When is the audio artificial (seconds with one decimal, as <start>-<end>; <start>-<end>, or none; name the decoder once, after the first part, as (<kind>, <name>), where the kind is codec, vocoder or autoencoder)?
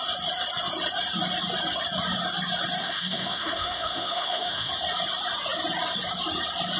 2.8-4.7 (autoencoder, DAC-VAE)